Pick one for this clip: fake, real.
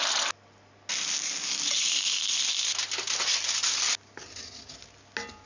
real